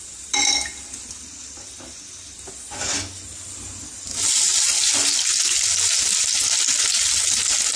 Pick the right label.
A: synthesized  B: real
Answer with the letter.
B